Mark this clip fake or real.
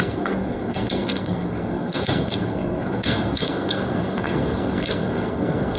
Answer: fake